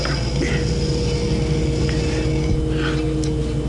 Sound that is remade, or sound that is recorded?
recorded